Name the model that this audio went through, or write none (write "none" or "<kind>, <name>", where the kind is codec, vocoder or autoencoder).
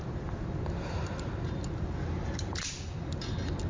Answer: vocoder, BigVGAN v2